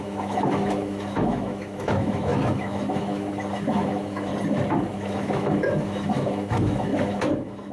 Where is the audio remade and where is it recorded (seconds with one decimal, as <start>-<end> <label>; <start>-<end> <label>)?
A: 0.0-4.3 remade; 4.3-4.9 recorded; 4.9-7.7 remade

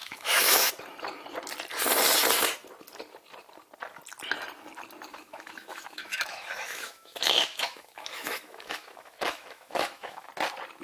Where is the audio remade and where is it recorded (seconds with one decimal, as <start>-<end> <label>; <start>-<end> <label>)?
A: 0.0-0.7 remade; 0.7-5.1 recorded; 5.1-10.3 remade; 10.3-10.8 recorded